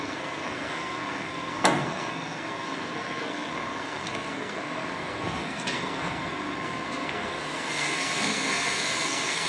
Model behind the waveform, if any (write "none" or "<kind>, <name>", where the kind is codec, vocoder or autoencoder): codec, SNAC